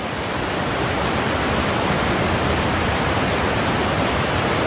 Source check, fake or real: real